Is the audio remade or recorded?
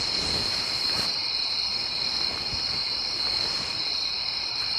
remade